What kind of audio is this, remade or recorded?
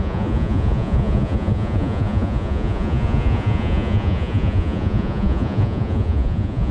remade